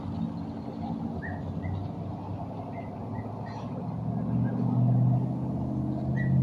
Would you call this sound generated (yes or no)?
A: no